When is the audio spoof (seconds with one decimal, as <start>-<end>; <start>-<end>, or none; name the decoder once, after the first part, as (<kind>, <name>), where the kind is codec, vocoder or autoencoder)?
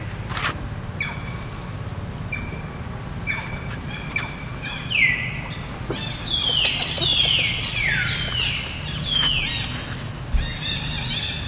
none